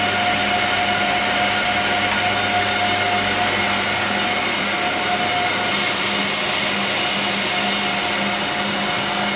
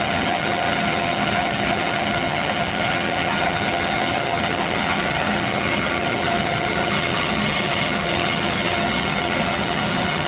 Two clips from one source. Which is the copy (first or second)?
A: second